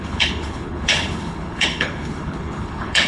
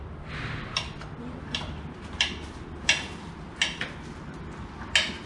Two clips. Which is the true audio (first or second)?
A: second